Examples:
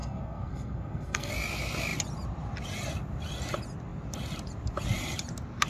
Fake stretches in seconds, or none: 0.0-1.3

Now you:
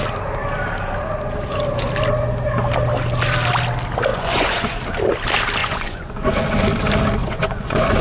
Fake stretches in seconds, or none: 4.1-4.8; 5.6-6.3; 7.2-8.0

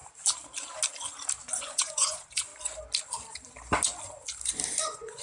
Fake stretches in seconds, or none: 1.6-2.5; 4.8-5.2

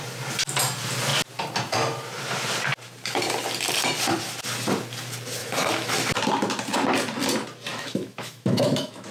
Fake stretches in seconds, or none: 5.4-5.9; 7.7-9.1